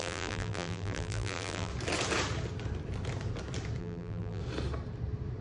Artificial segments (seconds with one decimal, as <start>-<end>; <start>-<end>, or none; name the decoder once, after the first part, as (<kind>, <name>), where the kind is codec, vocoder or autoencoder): 0.0-1.7 (vocoder, BigVGAN v2); 3.8-4.4